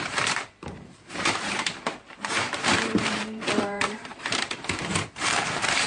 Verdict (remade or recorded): remade